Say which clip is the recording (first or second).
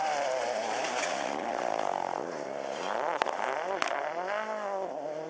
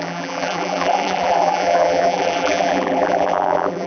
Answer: first